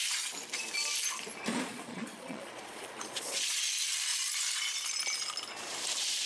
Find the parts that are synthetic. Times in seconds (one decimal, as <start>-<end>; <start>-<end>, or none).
1.5-3.6